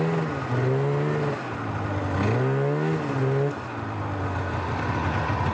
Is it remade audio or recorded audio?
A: recorded